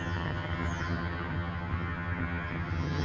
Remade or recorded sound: remade